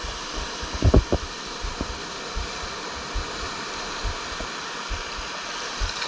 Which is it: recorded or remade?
recorded